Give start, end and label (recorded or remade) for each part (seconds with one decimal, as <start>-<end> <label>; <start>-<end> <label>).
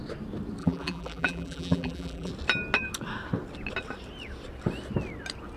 0.0-0.6 recorded; 0.6-2.3 remade; 2.3-5.6 recorded